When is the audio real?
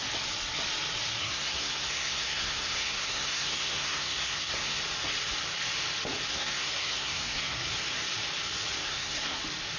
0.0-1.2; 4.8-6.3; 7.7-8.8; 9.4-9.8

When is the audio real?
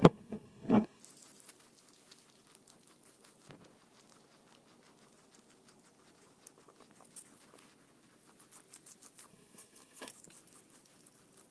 1.0-9.3; 10.1-11.5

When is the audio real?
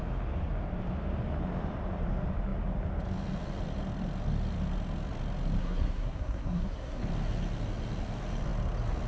0.0-5.6; 7.0-9.1